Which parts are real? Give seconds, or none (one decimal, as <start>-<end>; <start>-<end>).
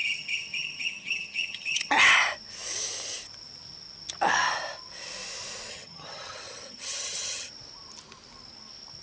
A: 1.9-5.7; 7.5-9.0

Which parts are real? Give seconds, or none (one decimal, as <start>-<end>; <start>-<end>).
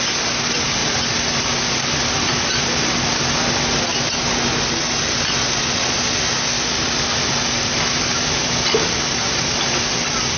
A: 0.0-10.4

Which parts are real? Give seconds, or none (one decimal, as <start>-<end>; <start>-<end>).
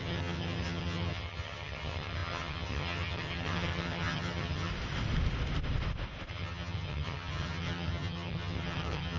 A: 4.7-6.3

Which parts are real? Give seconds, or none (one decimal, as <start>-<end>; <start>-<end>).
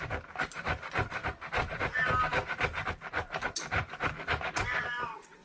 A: 0.0-5.4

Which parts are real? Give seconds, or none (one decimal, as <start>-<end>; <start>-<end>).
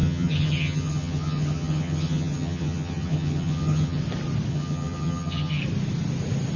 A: 4.0-4.5; 5.6-6.6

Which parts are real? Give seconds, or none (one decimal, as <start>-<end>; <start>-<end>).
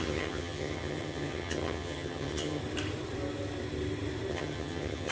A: 2.6-4.3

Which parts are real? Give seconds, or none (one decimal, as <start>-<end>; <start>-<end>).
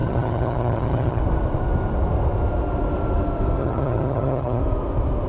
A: 1.2-3.6; 4.6-5.3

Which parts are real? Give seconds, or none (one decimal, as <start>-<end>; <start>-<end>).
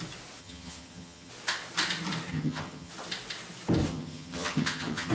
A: 0.0-0.4; 1.3-2.3; 2.9-3.9